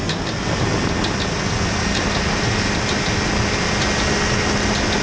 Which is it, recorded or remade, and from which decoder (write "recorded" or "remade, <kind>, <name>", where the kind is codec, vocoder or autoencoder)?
recorded